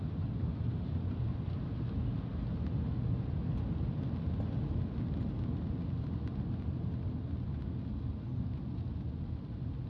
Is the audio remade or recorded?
recorded